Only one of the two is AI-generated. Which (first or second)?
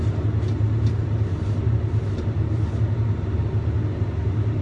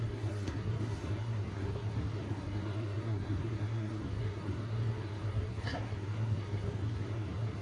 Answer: second